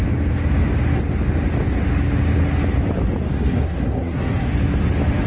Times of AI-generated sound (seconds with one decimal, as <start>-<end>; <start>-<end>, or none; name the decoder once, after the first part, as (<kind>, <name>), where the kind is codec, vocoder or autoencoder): 3.3-4.5 (codec, SNAC)

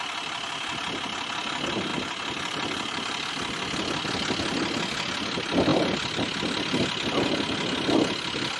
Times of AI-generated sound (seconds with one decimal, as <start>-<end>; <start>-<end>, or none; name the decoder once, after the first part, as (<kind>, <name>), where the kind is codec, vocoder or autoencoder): 1.9-3.3 (vocoder, BigVGAN v2)

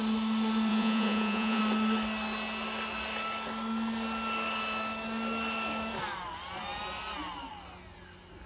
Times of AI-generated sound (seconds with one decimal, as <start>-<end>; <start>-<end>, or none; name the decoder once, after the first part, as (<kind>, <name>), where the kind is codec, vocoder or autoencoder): 0.7-1.6 (vocoder, Vocos)

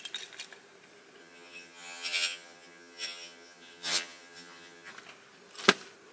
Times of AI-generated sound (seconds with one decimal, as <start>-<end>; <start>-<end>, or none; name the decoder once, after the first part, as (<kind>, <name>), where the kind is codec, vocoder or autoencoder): 1.2-4.9 (vocoder, HiFi-GAN)

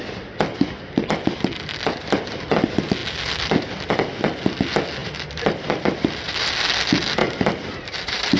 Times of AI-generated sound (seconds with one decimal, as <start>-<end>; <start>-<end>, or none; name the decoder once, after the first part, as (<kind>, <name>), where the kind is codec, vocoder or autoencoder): 5.0-5.8 (vocoder, BigVGAN v2); 7.2-8.4

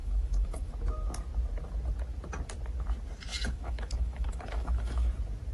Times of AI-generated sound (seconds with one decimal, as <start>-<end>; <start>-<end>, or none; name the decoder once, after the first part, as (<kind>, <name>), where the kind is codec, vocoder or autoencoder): 0.0-0.7 (autoencoder, DAC-VAE); 3.3-5.1